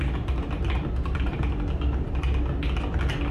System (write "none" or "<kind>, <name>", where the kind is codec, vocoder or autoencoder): none